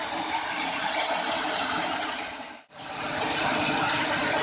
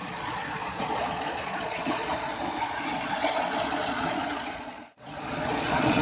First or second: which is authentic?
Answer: first